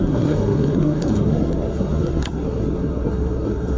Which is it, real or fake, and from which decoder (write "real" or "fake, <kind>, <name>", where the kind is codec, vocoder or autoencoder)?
fake, codec, SNAC